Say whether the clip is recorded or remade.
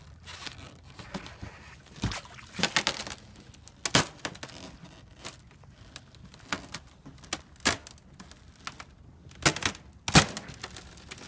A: recorded